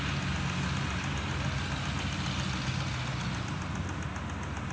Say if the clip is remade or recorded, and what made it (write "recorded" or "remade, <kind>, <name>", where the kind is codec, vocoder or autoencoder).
recorded